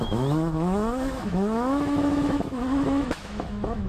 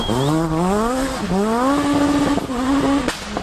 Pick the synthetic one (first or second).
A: first